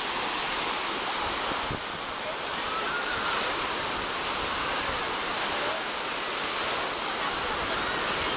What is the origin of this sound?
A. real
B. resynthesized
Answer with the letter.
A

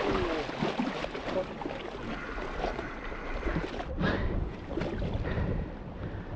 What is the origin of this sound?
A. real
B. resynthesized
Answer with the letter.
A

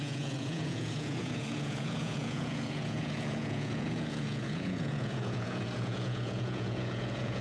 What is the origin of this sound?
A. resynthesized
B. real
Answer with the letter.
A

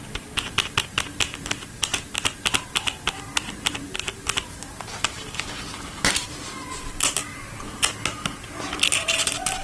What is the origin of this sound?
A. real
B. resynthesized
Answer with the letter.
A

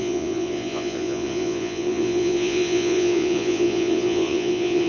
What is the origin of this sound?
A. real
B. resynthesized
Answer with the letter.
B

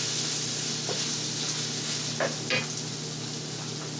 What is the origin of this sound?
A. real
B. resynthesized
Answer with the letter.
A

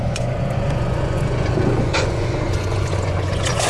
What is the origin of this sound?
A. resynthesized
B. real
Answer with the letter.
A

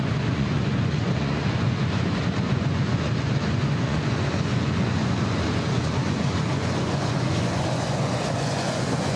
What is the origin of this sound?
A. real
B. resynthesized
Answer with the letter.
B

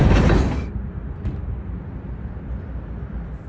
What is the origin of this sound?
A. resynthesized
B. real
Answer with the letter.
B